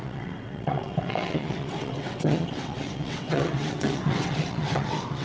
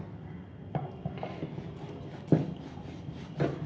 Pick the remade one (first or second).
first